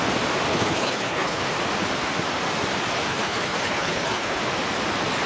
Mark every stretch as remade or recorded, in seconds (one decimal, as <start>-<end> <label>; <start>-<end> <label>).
0.0-0.5 recorded; 0.5-1.4 remade; 1.4-3.1 recorded; 3.1-4.4 remade; 4.4-5.3 recorded